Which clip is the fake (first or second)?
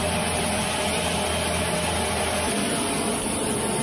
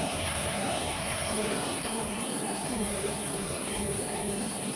second